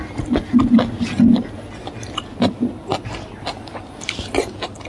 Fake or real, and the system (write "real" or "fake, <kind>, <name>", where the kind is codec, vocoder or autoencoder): real